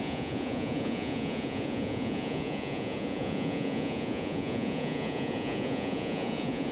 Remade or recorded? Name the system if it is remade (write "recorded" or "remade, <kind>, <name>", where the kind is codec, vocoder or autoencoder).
remade, vocoder, Vocos